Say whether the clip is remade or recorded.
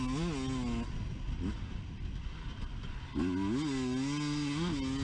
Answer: recorded